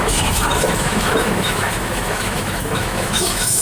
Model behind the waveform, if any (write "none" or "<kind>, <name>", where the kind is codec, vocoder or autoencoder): autoencoder, DAC-VAE